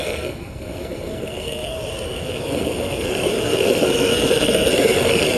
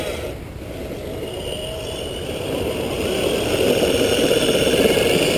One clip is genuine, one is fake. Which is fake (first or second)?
first